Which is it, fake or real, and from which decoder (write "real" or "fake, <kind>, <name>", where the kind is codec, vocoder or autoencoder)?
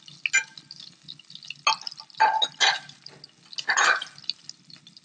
real